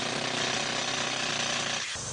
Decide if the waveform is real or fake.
real